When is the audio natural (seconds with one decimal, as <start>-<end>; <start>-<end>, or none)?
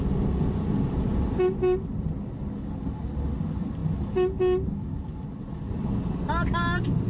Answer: 0.0-7.1